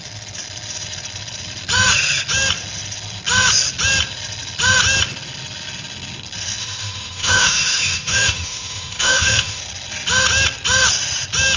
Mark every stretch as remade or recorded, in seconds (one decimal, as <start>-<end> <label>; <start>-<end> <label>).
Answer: 0.0-6.6 recorded; 6.6-9.6 remade; 9.6-11.6 recorded